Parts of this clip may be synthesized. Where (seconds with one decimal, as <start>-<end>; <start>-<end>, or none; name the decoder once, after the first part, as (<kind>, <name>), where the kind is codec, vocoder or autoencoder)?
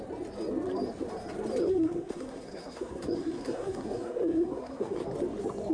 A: 1.6-5.0 (codec, SNAC)